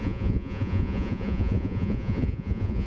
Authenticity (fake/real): fake